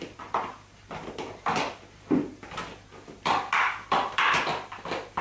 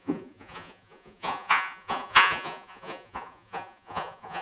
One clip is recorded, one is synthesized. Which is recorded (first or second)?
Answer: first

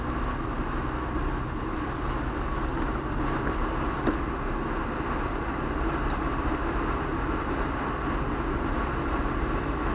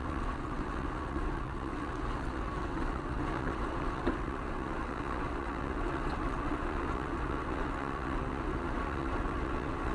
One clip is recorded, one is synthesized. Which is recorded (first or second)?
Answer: first